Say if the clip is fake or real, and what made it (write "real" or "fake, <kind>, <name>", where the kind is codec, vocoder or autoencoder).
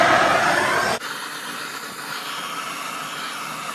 real